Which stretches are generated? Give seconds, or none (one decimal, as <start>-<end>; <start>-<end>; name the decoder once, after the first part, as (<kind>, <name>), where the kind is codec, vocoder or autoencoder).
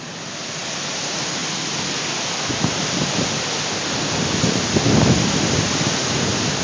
none